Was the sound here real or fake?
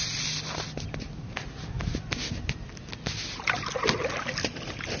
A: real